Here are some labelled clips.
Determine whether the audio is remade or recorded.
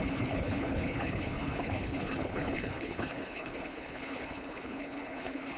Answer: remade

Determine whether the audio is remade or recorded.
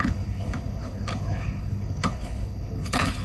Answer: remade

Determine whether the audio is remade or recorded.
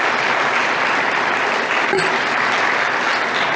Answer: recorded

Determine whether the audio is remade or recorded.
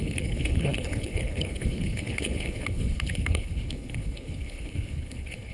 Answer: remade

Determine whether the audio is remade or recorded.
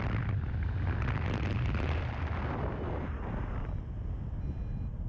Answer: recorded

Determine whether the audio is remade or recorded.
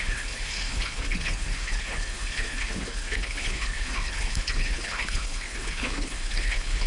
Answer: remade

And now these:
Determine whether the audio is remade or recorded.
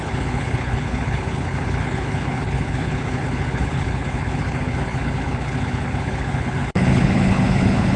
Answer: remade